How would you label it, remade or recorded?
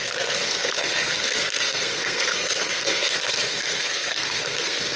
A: remade